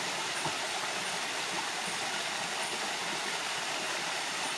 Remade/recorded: recorded